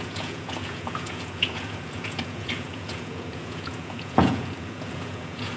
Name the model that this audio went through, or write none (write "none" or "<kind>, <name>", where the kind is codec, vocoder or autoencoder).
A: vocoder, Vocos